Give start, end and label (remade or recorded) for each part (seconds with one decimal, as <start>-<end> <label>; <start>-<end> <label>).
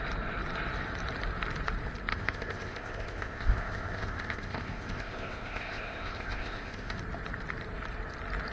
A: 0.0-2.1 recorded; 2.1-7.0 remade; 7.0-8.5 recorded